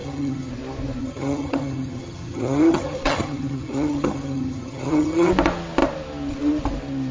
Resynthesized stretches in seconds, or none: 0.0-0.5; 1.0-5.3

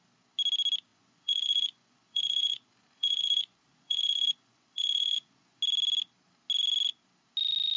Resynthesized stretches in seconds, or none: 0.9-5.6

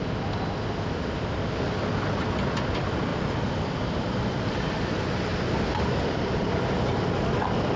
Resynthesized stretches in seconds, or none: none

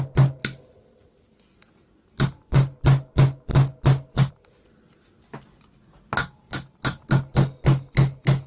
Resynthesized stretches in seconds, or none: none

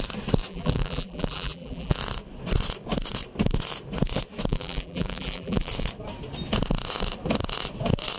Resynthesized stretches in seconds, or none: 0.5-2.0; 4.5-5.7